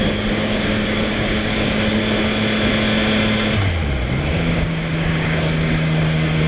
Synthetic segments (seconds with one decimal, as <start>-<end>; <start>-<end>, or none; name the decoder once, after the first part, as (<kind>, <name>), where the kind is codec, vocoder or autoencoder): 0.0-2.0 (codec, DAC); 4.2-6.5

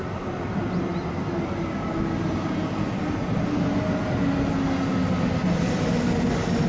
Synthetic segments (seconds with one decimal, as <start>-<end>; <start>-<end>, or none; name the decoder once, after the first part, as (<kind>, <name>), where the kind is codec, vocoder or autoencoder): none

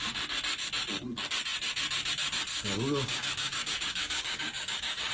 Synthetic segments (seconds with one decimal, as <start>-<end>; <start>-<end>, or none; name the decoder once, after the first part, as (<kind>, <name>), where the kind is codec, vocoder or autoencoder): 2.5-5.1 (codec, DAC)

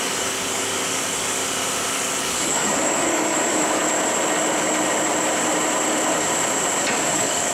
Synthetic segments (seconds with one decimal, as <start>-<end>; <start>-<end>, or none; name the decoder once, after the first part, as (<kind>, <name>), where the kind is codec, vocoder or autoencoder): 0.0-1.4 (codec, DAC); 1.9-3.8; 7.1-7.5

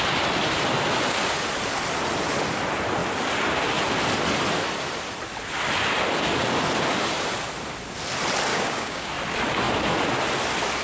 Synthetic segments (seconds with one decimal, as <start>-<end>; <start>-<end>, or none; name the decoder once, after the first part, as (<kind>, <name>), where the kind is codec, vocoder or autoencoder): 8.5-9.1 (codec, DAC)

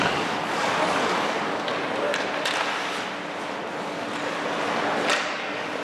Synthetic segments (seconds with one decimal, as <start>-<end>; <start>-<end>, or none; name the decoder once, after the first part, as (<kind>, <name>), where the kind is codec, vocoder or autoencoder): 0.0-1.7 (codec, DAC); 5.2-5.8

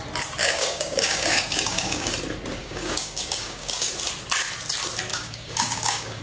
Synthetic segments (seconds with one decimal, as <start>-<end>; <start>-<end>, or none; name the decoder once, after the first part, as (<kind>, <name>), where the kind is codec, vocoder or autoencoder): 0.4-2.1 (codec, DAC); 2.6-3.9; 5.1-6.2